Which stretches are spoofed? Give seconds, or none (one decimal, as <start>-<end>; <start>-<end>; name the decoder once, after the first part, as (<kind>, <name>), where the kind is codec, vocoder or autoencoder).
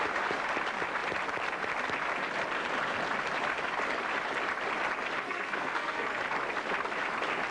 5.2-6.2 (codec, SNAC)